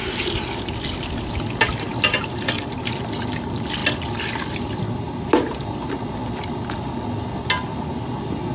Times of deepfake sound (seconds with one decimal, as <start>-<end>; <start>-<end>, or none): none